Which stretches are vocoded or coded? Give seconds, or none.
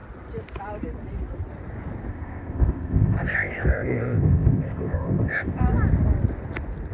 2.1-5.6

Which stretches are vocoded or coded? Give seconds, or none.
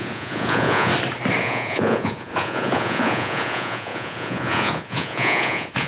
0.0-0.9; 1.4-5.9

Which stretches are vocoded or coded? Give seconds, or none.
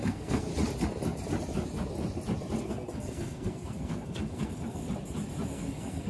0.0-0.5; 2.6-4.8; 5.5-6.1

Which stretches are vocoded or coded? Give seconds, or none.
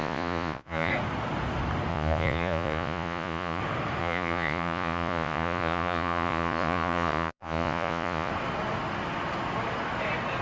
0.0-0.9; 1.9-3.6; 4.0-8.3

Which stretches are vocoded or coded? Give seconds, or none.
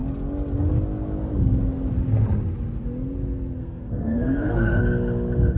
3.6-4.8